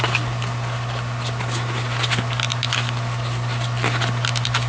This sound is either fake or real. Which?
real